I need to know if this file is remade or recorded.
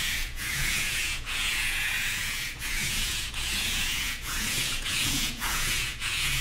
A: remade